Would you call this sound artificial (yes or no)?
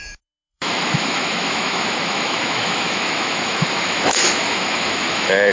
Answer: yes